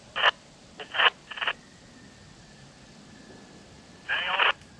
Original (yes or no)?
yes